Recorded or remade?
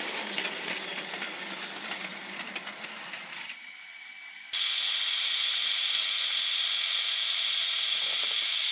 recorded